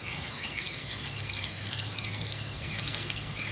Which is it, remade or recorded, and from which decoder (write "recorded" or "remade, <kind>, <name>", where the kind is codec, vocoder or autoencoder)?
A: remade, codec, SNAC